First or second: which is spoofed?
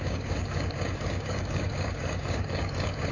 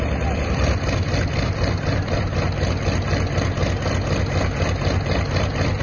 first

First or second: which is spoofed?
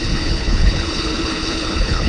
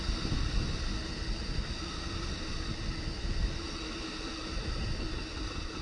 first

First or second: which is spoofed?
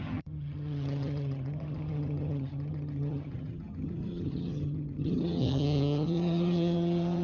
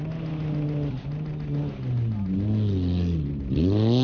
first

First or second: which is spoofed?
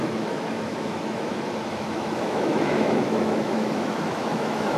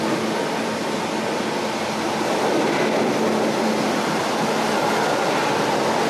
first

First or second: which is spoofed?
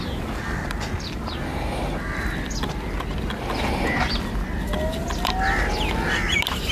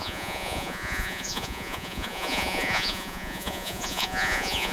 second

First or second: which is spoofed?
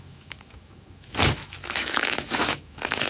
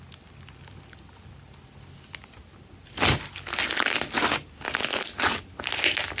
first